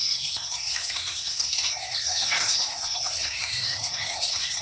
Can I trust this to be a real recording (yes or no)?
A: no